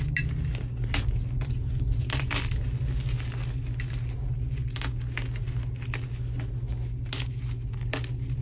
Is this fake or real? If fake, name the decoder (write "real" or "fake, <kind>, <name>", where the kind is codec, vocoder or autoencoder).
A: real